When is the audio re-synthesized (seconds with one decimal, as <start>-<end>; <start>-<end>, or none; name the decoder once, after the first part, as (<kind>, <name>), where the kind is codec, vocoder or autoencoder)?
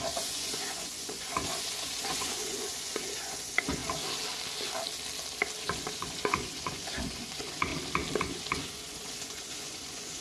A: 0.0-3.8 (vocoder, Vocos); 5.6-7.7; 8.2-10.2